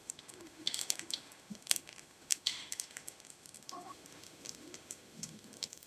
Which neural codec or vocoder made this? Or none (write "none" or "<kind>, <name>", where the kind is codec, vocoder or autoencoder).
autoencoder, DAC-VAE